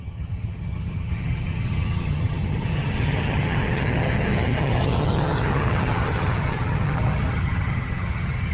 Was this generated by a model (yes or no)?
yes